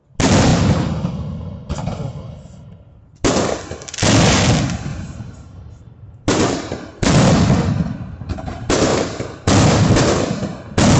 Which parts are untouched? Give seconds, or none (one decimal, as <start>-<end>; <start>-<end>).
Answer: 0.0-4.9; 6.5-11.0